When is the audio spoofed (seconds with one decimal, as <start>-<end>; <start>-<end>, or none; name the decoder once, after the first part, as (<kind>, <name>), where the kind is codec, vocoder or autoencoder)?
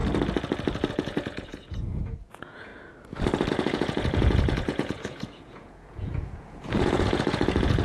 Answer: 0.9-2.7 (vocoder, Vocos); 3.5-7.8